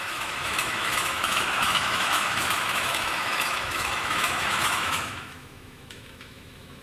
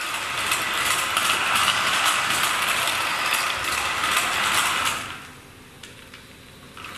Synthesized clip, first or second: first